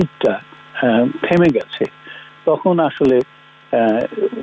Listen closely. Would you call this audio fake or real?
real